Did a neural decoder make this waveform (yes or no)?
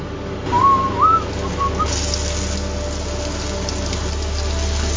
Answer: no